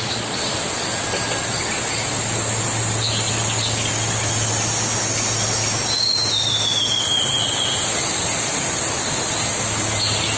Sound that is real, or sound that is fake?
real